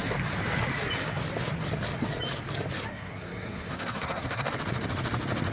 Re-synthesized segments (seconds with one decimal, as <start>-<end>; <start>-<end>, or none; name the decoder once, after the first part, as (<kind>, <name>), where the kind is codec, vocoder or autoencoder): 2.9-4.5 (codec, SNAC)